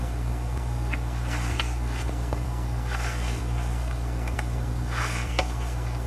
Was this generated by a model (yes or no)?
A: yes